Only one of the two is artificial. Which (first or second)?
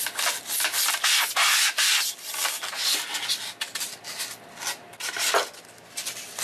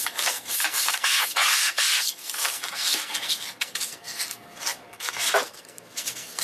second